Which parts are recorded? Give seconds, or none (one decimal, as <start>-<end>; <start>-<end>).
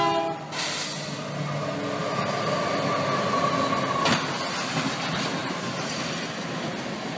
0.0-5.4; 6.1-7.2